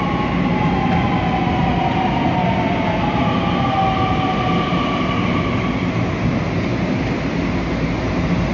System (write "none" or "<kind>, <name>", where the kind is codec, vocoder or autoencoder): none